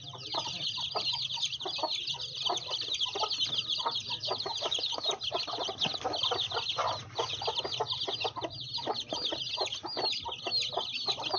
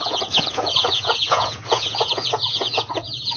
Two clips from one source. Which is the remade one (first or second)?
second